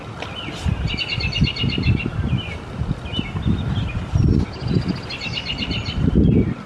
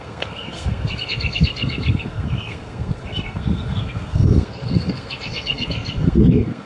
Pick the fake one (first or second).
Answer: second